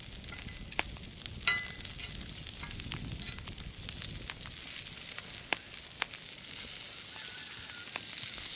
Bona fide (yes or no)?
yes